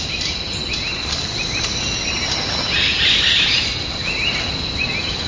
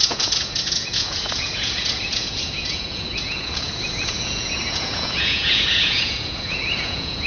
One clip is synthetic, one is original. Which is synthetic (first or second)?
second